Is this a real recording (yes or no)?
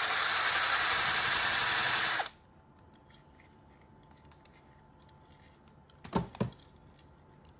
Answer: yes